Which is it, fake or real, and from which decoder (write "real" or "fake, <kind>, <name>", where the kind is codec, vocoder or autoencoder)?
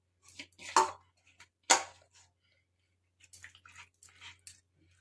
real